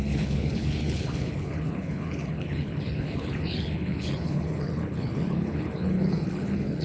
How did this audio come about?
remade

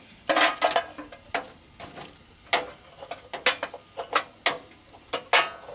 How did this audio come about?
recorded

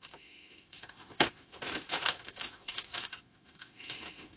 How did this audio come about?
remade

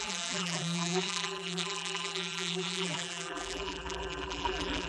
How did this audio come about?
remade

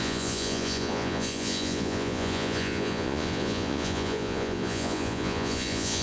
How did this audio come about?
remade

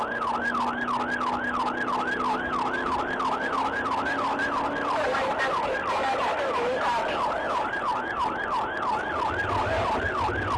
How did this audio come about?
recorded